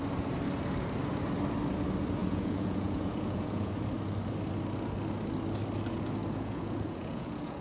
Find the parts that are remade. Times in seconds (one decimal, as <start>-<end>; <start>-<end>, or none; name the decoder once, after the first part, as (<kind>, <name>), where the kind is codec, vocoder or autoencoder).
2.2-3.7 (vocoder, Vocos); 6.2-7.6